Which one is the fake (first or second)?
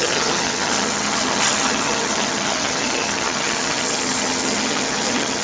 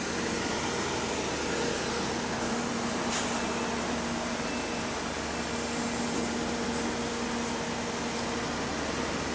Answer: first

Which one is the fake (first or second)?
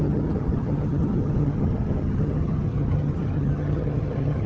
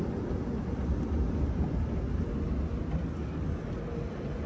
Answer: first